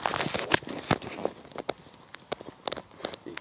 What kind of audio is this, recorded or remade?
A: recorded